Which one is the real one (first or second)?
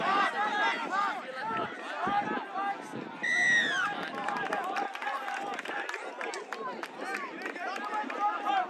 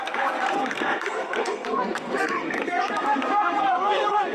first